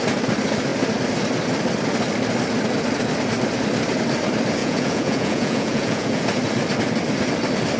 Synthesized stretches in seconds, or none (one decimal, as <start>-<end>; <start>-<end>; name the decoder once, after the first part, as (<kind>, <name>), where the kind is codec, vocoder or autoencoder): 4.6-6.2 (vocoder, Vocos)